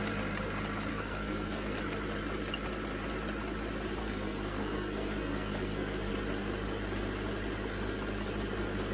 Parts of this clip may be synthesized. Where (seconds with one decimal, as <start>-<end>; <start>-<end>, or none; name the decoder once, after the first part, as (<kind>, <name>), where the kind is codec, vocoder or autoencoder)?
0.9-1.8 (codec, SNAC); 4.0-6.1

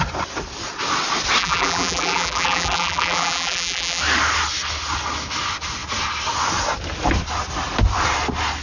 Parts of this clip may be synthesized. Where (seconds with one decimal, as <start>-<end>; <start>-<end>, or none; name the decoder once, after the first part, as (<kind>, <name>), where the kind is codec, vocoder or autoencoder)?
1.4-4.0 (vocoder, BigVGAN v2)

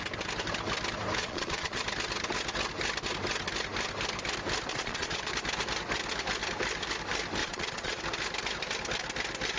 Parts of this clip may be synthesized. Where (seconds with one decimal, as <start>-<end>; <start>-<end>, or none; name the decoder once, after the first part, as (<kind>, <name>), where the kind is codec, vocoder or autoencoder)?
1.2-1.8 (vocoder, Vocos); 4.7-5.3; 7.4-8.0

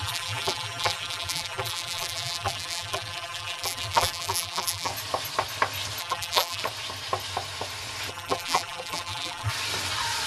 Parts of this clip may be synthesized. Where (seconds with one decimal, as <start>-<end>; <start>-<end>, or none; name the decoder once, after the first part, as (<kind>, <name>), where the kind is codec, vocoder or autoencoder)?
0.0-4.9 (vocoder, BigVGAN v2); 6.0-6.6; 8.1-9.5

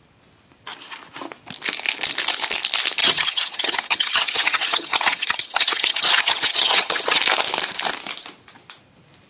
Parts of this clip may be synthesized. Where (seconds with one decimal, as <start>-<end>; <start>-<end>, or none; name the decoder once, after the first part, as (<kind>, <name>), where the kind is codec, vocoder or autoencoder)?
3.0-7.2 (vocoder, HiFi-GAN)

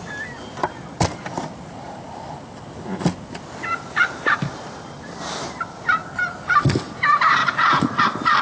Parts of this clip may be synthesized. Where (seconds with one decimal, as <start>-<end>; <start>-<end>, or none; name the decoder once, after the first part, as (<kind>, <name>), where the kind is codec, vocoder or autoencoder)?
7.4-8.0 (vocoder, Vocos)

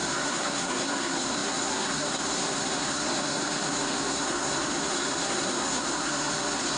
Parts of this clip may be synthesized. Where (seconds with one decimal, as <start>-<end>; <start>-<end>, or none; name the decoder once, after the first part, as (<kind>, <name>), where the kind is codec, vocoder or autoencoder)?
0.0-6.8 (codec, SNAC)

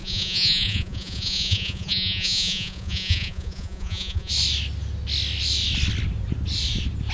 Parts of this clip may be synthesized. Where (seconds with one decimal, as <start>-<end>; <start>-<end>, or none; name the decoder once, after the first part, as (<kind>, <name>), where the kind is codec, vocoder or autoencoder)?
0.0-4.3 (vocoder, Vocos)